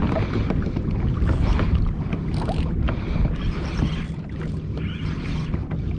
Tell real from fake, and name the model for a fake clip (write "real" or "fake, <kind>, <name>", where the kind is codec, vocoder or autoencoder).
real